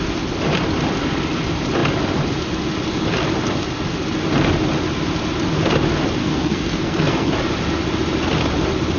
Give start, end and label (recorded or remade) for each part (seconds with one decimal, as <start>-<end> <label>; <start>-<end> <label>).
0.0-6.2 recorded; 6.2-7.3 remade; 7.3-9.0 recorded